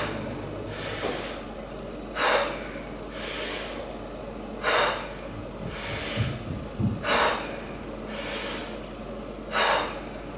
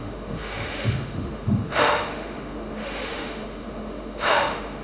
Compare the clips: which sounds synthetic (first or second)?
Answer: second